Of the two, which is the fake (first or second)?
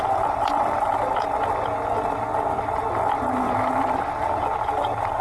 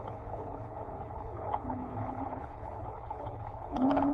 second